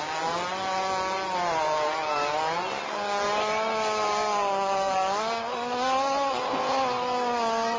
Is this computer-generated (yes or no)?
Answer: no